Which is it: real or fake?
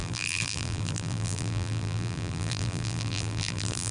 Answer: fake